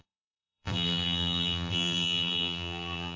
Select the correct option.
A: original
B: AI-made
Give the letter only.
B